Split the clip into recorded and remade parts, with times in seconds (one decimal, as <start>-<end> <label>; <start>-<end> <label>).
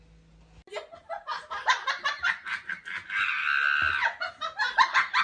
0.0-5.2 recorded